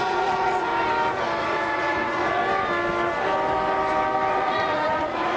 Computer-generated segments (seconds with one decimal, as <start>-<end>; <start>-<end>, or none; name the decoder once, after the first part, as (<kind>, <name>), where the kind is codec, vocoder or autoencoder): 0.0-0.7 (vocoder, Vocos); 1.4-2.4; 4.3-5.4